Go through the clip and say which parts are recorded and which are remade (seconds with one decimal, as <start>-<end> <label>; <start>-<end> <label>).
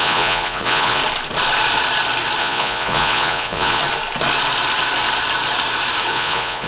0.0-1.0 remade; 1.0-2.4 recorded; 2.4-3.8 remade; 3.8-6.1 recorded; 6.1-6.7 remade